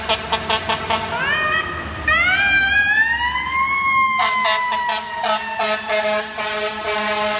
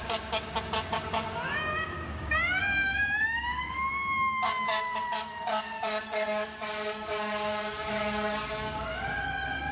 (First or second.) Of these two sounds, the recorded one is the first